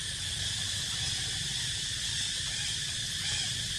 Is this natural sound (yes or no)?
yes